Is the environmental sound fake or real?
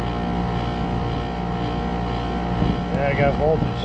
real